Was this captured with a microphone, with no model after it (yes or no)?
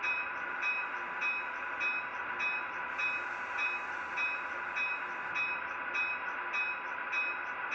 yes